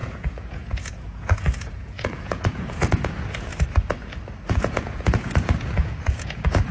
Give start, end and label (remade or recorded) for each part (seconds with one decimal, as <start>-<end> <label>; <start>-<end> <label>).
0.0-3.5 remade; 3.5-4.5 recorded; 4.5-6.7 remade